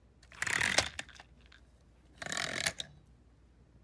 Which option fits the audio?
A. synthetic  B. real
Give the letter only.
B